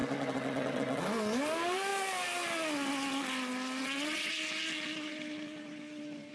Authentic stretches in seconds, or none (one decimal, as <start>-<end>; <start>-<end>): 1.0-3.8; 4.3-6.3